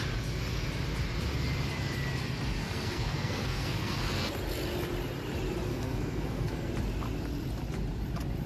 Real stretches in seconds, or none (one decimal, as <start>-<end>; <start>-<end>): 0.0-2.6; 4.3-5.7; 6.7-8.5